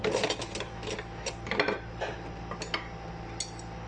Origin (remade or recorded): recorded